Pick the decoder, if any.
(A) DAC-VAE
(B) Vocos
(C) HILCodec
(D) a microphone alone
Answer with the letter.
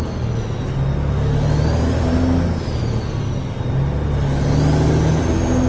D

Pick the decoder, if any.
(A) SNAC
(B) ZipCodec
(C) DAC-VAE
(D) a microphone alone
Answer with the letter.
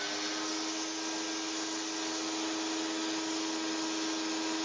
D